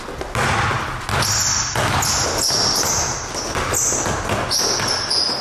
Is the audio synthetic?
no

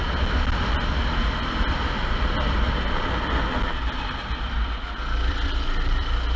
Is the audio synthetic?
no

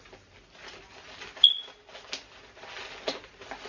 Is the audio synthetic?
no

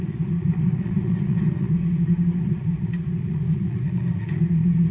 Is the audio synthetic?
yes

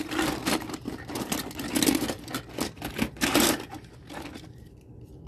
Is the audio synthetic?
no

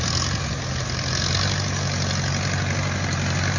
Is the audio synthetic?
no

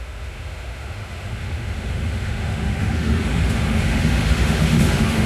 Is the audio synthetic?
yes